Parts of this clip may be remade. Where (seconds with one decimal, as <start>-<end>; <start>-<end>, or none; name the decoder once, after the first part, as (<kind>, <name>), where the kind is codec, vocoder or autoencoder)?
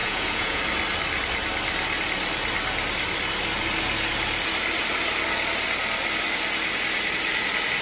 0.0-0.6 (vocoder, Vocos)